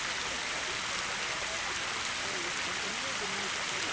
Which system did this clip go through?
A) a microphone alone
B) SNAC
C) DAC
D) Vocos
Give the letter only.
A